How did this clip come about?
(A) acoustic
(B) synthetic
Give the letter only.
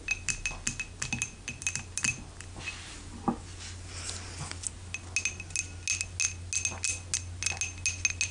A